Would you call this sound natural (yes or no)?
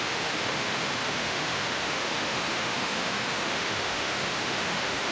no